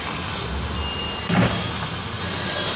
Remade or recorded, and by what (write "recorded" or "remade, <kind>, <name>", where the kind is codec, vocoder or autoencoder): recorded